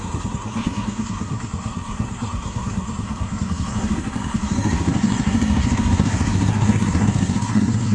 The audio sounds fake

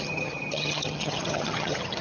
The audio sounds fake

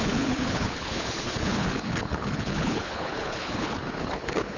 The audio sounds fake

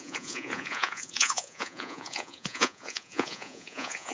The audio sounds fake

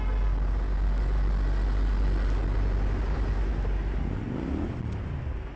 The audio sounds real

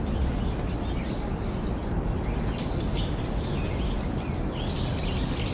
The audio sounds real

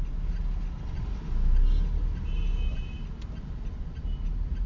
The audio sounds real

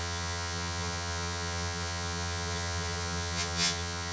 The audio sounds fake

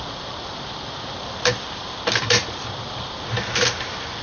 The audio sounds fake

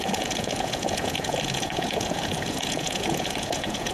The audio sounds fake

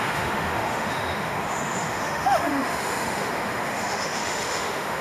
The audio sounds fake